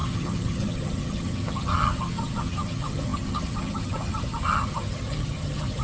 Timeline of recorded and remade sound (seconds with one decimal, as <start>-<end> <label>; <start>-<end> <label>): 0.0-5.8 remade